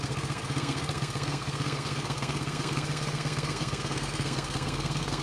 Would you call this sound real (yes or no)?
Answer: no